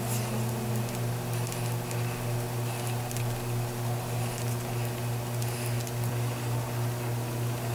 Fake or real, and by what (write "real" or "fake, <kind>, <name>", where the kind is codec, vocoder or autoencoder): real